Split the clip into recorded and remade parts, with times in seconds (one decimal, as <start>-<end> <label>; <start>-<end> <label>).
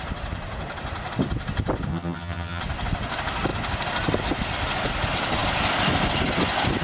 0.0-1.9 recorded; 1.9-2.6 remade; 2.6-6.8 recorded